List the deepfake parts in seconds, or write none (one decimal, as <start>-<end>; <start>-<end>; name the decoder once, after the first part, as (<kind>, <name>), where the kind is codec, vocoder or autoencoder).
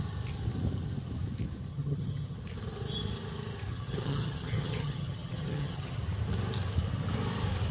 1.7-2.4 (vocoder, HiFi-GAN); 3.7-6.0